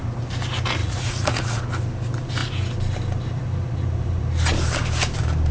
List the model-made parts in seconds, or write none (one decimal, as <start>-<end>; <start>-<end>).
0.8-1.6